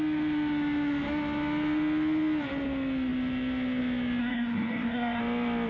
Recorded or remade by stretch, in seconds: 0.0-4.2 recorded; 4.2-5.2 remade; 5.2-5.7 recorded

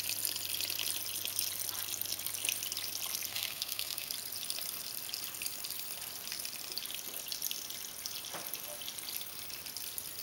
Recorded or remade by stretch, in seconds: 0.0-3.3 recorded; 3.3-4.1 remade; 4.1-10.2 recorded

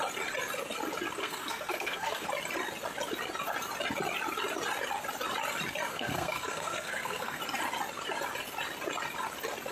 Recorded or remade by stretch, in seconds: 0.0-1.2 recorded; 1.2-2.3 remade; 2.3-5.9 recorded; 5.9-7.4 remade; 7.4-9.7 recorded

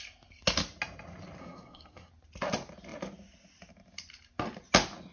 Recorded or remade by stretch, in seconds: 0.0-1.4 recorded; 1.4-2.1 remade; 2.1-5.1 recorded

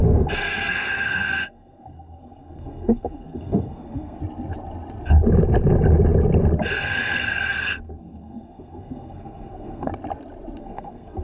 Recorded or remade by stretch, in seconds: 0.0-4.2 remade; 4.2-6.7 recorded; 6.7-9.9 remade; 9.9-10.6 recorded; 10.6-11.2 remade

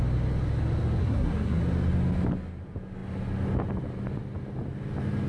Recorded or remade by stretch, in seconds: 0.0-1.0 recorded; 1.0-1.6 remade; 1.6-5.3 recorded